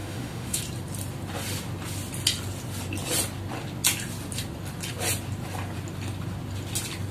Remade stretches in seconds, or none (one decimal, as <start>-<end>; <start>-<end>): 0.0-0.6